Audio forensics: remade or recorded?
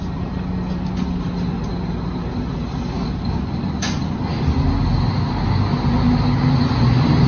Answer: recorded